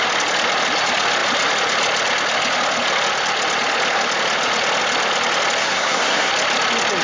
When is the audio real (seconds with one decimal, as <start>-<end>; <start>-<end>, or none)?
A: 0.0-5.6; 6.3-7.0